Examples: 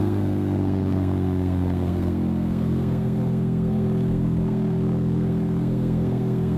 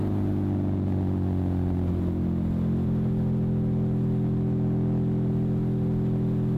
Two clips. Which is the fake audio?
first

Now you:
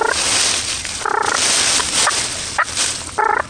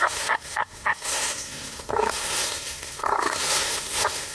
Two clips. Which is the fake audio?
second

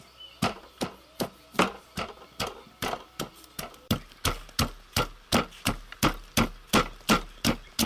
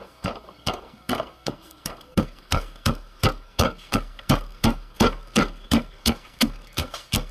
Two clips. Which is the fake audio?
second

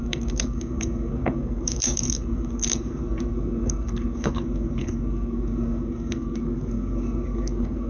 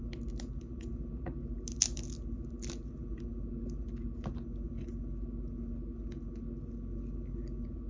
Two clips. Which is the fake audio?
first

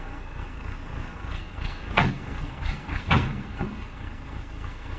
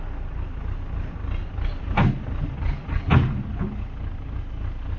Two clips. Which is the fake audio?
first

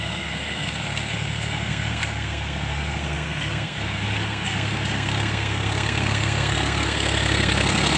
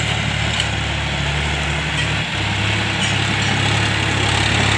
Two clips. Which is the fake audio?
first